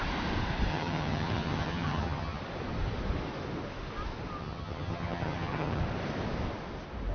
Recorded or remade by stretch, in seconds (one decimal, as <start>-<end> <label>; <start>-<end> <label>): 0.0-0.7 recorded; 0.7-2.4 remade; 2.4-4.4 recorded; 4.4-5.8 remade; 5.8-7.1 recorded